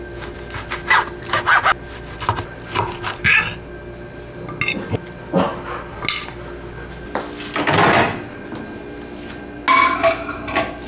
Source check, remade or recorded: recorded